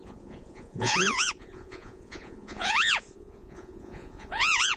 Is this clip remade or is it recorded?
remade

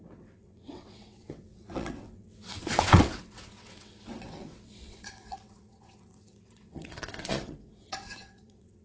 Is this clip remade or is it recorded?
remade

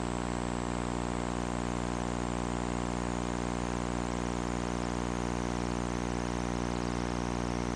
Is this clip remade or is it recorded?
recorded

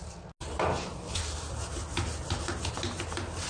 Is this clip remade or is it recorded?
recorded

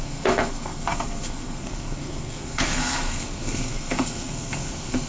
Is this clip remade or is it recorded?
remade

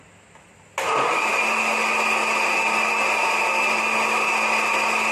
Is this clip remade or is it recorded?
recorded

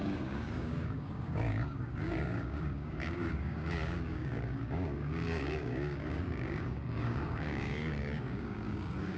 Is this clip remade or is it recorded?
remade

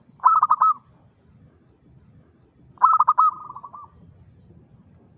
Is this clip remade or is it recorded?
recorded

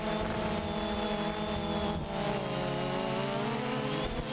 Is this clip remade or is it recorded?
recorded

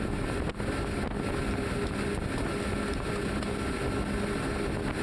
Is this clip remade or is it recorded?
recorded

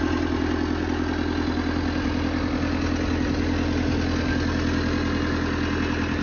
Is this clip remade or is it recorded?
recorded